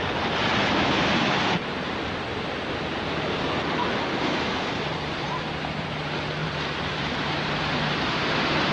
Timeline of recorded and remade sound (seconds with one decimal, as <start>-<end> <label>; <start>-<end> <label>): 0.0-0.4 recorded; 0.4-2.1 remade; 2.1-3.8 recorded; 3.8-5.9 remade; 5.9-6.4 recorded; 6.4-7.4 remade; 7.4-8.7 recorded